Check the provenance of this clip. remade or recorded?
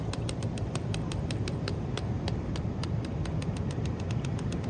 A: remade